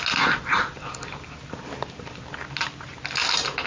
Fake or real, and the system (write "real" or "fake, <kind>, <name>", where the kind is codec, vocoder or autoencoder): real